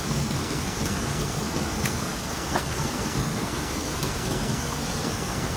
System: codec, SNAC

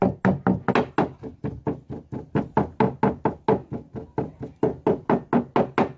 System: none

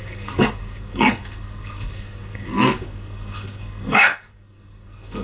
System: codec, SNAC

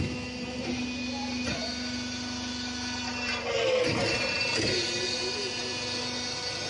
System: none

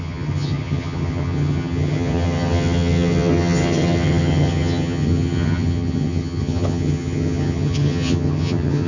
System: vocoder, HiFi-GAN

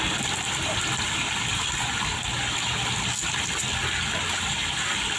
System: none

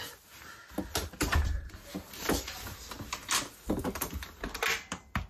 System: none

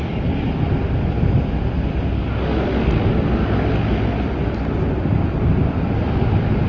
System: none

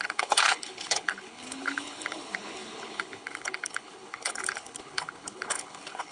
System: codec, HILCodec